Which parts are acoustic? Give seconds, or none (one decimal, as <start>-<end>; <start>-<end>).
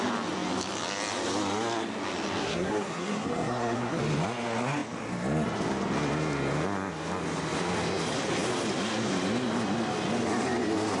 0.0-2.4; 4.0-11.0